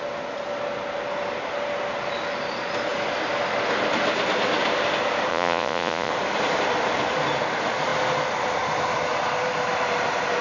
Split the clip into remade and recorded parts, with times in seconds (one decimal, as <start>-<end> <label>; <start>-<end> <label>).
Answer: 0.0-5.3 recorded; 5.3-6.1 remade; 6.1-10.4 recorded